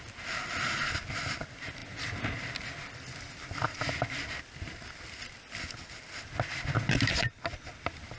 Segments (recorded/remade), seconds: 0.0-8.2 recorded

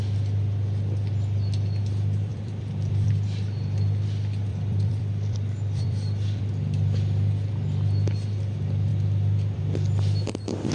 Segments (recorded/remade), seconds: 0.0-2.3 recorded; 2.3-3.1 remade; 3.1-4.5 recorded; 4.5-6.4 remade; 6.4-8.9 recorded; 8.9-9.6 remade; 9.6-10.7 recorded